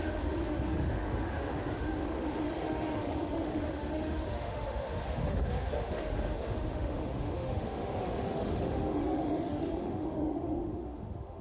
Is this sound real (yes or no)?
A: no